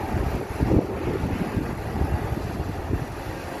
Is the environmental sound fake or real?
real